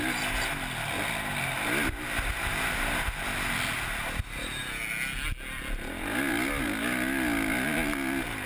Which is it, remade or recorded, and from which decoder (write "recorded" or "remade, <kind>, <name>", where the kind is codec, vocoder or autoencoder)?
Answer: recorded